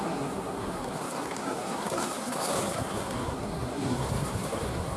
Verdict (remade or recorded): remade